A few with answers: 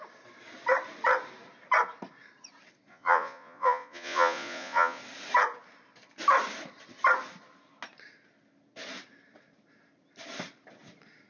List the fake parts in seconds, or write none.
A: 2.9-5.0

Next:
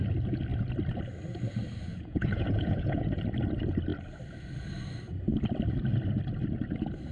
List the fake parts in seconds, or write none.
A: 1.9-3.2

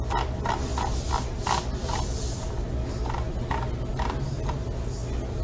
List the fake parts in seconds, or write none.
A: none

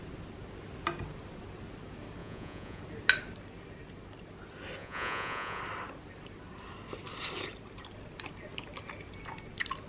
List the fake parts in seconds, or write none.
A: 2.2-2.8; 4.8-5.6

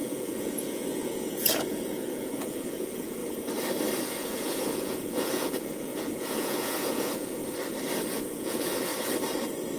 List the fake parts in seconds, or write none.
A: 0.0-3.2; 4.0-7.4; 8.1-8.9

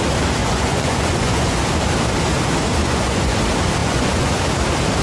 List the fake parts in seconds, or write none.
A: 0.4-1.6; 2.8-3.4; 3.8-4.3

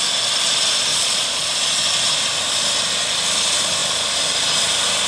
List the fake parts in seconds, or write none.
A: 0.9-1.8

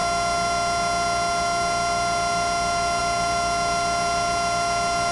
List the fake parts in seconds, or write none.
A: none